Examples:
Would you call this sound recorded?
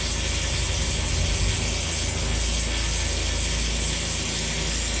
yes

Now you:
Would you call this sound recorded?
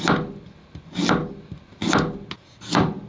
yes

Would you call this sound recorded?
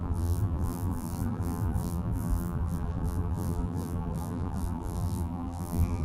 no